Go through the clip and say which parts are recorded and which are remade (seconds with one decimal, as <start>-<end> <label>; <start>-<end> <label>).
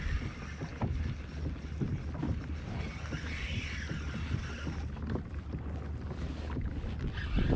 0.0-7.6 recorded